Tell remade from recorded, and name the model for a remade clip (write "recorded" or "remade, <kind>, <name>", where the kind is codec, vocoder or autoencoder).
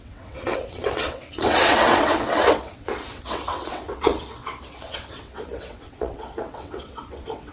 remade, vocoder, WaveNeXt